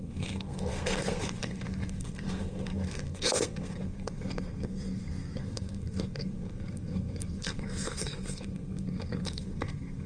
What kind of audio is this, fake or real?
fake